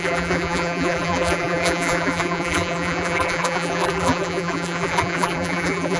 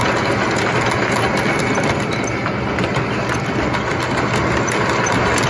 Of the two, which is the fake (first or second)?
first